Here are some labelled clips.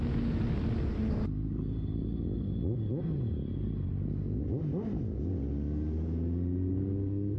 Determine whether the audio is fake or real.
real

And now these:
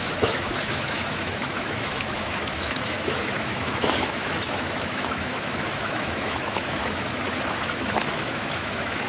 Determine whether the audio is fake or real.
fake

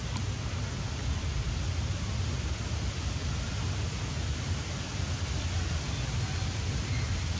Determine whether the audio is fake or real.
real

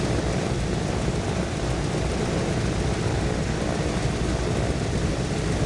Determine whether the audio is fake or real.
real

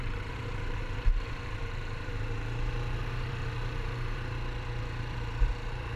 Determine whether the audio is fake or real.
fake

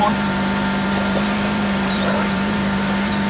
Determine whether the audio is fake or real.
fake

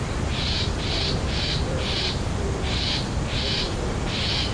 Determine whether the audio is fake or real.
fake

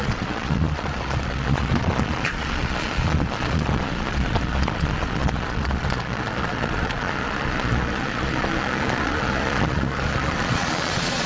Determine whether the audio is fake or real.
fake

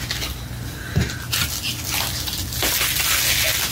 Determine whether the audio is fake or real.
real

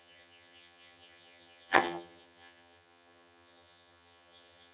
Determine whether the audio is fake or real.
fake